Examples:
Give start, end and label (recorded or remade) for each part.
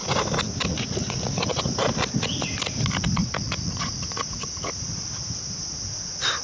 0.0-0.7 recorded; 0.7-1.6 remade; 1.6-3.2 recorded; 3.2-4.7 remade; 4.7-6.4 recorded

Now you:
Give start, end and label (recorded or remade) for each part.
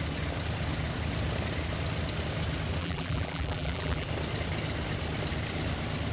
0.0-2.8 recorded; 2.8-4.1 remade; 4.1-6.1 recorded